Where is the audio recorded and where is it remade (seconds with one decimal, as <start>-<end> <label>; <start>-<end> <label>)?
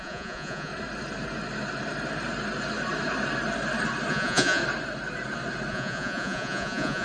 0.0-0.7 remade; 0.7-4.1 recorded; 4.1-4.6 remade; 4.6-5.7 recorded; 5.7-7.0 remade